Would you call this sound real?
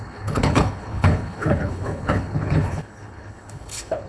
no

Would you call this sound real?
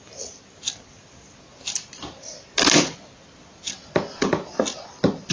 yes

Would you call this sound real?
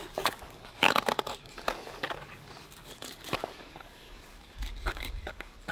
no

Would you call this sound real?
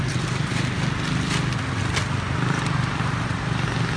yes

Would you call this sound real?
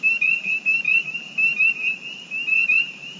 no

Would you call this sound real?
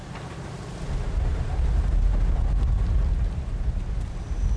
yes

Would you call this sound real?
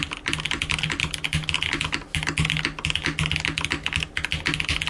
yes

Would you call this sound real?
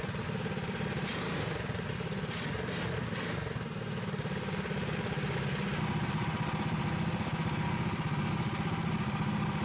yes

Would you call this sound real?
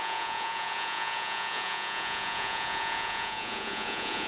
no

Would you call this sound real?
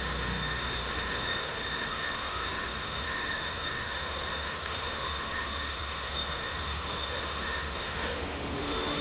no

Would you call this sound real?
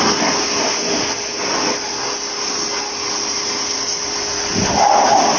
yes